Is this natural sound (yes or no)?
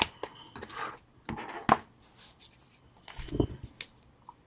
yes